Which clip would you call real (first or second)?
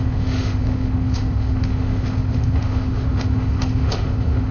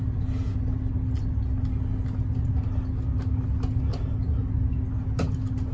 second